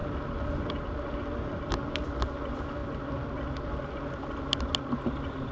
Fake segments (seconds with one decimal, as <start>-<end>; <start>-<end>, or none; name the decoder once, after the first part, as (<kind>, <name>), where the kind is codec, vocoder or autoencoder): 0.7-2.8 (vocoder, BigVGAN v2); 3.8-5.5